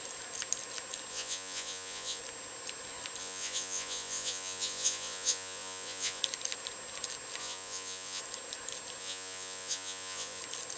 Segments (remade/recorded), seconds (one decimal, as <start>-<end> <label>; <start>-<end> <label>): 0.0-1.1 recorded; 1.1-2.2 remade; 2.2-3.2 recorded; 3.2-6.2 remade; 6.2-7.4 recorded; 7.4-8.2 remade; 8.2-9.0 recorded; 9.0-10.4 remade; 10.4-10.8 recorded